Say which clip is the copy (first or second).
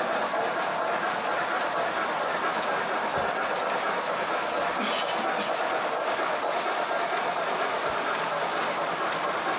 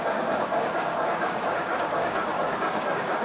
second